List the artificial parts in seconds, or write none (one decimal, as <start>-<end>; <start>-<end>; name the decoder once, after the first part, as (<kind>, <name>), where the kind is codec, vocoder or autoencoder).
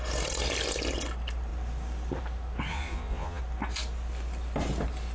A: 2.7-3.4 (vocoder, Vocos)